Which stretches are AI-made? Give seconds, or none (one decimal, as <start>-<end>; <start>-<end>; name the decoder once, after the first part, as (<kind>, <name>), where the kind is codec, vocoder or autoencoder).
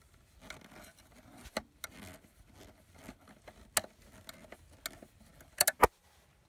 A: none